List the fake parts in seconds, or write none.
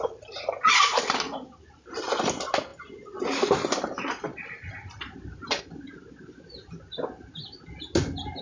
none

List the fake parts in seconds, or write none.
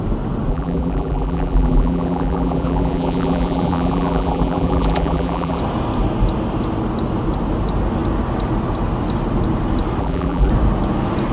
0.5-5.6 (vocoder, BigVGAN v2); 10.0-10.5